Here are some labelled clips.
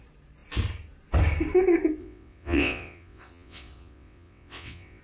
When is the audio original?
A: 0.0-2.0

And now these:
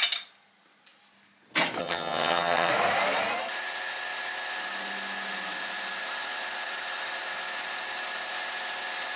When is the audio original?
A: 0.0-1.8; 2.7-9.2

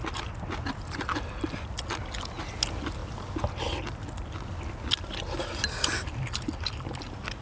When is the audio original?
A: 0.0-7.4

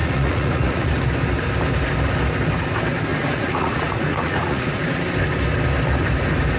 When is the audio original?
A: 0.9-3.1; 4.8-6.6

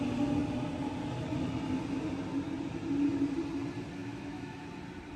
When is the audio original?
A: 0.0-4.0; 4.6-5.2

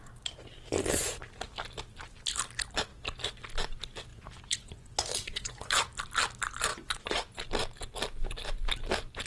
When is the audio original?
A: 0.0-4.1; 5.7-6.7; 7.4-9.3

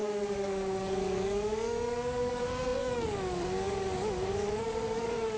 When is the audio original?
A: none